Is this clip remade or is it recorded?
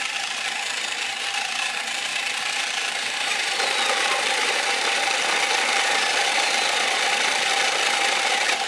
remade